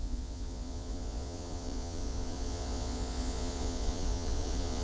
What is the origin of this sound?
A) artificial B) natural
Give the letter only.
A